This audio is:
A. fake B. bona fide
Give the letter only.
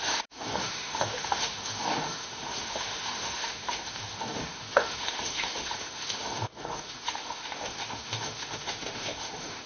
A